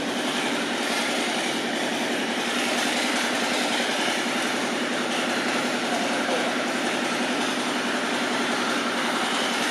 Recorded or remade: remade